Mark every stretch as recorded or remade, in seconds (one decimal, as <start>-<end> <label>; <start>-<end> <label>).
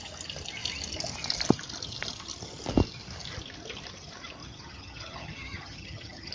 0.0-4.4 recorded; 4.4-6.3 remade